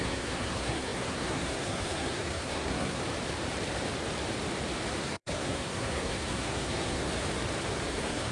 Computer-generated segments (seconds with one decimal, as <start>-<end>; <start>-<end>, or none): 0.0-3.0; 5.0-7.1; 7.9-8.3